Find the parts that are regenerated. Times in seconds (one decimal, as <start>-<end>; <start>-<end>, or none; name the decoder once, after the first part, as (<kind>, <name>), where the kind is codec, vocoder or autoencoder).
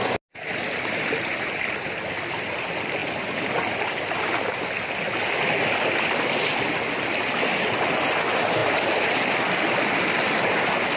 none